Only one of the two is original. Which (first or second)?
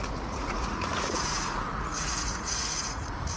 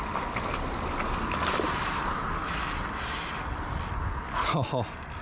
second